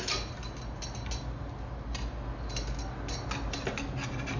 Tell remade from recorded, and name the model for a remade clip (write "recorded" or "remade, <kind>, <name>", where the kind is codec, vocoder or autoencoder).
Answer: recorded